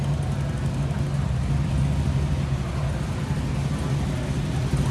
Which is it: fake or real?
real